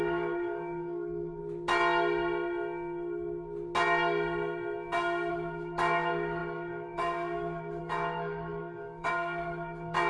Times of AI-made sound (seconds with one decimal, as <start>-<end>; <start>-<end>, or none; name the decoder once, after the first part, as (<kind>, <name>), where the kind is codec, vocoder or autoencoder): 0.0-1.4 (codec, DAC); 5.3-10.1